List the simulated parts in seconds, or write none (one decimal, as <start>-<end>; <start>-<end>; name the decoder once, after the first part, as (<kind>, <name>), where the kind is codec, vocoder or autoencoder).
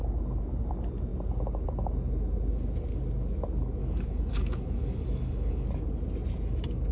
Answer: 3.8-5.7 (codec, DAC)